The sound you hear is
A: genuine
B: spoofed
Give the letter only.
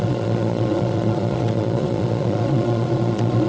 B